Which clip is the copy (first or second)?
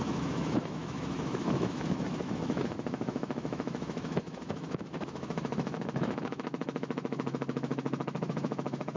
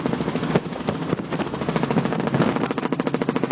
first